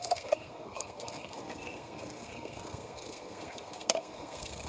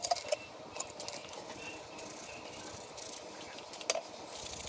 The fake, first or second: first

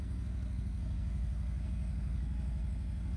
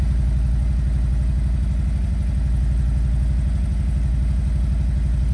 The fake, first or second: first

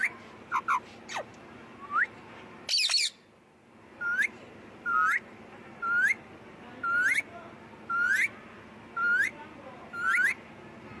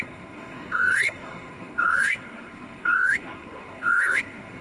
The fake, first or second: second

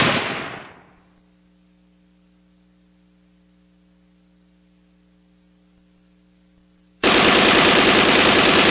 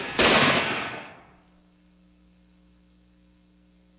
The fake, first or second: second